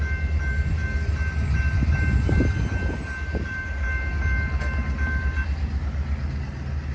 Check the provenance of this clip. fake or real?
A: real